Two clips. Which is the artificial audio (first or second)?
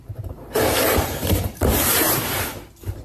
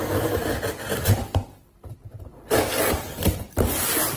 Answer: first